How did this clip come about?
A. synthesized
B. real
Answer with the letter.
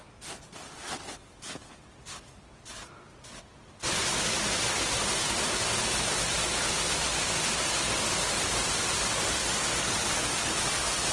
B